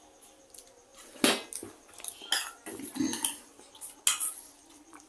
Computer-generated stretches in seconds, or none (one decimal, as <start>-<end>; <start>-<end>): none

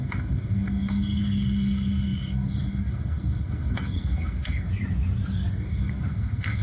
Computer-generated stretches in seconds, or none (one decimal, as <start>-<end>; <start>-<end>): 0.0-4.7; 5.5-6.6

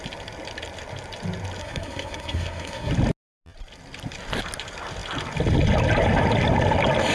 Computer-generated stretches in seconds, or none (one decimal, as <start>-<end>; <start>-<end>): 1.6-2.9

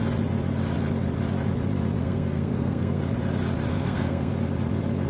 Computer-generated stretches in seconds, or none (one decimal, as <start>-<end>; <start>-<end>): 2.0-3.0; 3.7-4.3

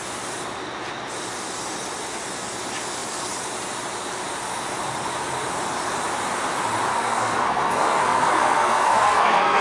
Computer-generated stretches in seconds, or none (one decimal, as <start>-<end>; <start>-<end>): 6.9-9.6

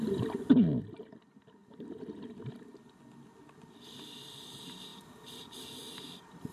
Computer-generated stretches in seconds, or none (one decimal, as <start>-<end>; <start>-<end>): none